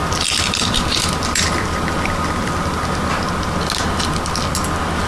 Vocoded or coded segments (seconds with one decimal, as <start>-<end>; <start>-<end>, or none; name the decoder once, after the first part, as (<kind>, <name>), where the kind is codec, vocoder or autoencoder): 0.0-3.1 (vocoder, BigVGAN v2)